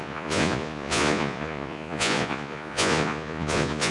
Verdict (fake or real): fake